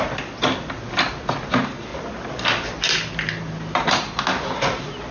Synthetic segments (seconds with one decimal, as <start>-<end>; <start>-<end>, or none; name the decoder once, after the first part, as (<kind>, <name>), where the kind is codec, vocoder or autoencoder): none